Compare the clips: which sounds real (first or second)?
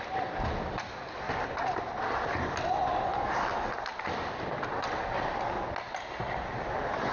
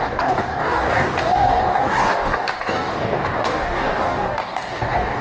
first